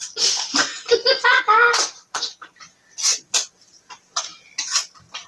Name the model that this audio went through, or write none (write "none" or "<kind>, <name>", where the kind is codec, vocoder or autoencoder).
vocoder, BigVGAN v2